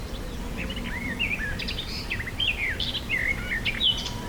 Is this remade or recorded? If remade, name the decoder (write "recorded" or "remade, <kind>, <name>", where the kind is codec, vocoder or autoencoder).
remade, vocoder, BigVGAN v2